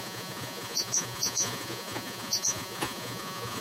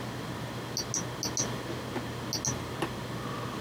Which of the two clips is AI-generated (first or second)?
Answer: first